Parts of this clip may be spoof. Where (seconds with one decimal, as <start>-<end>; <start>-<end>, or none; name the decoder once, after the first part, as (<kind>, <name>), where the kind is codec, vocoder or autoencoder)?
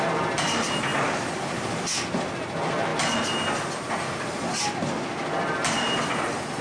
0.9-1.8 (vocoder, BigVGAN v2)